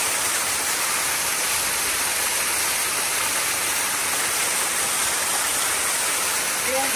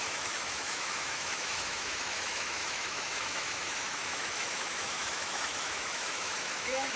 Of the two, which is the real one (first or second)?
first